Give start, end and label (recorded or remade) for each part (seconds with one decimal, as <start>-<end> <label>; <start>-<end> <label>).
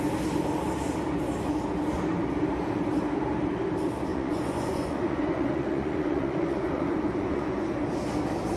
0.0-4.1 recorded; 4.1-7.7 remade; 7.7-8.6 recorded